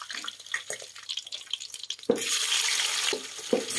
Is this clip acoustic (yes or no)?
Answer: yes